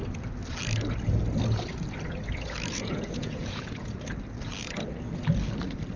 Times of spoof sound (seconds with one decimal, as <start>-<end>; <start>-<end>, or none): 2.7-3.9